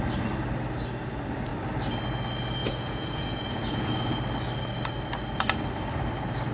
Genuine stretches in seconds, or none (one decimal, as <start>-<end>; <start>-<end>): 0.0-2.6; 3.9-6.5